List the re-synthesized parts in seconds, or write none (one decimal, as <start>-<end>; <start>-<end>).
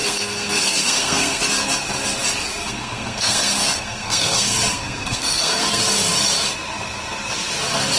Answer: 0.0-1.4; 2.6-5.8